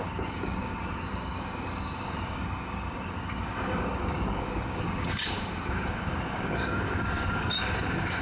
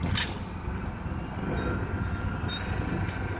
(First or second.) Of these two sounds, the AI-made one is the first